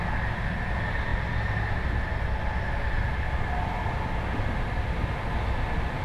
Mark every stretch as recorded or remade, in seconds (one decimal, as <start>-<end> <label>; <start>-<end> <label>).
0.0-6.0 recorded